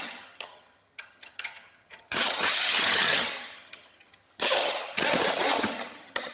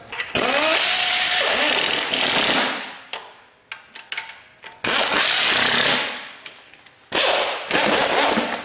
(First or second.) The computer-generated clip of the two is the first